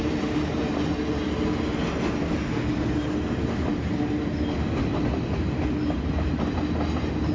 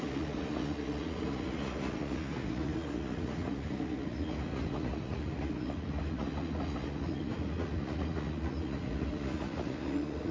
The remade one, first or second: second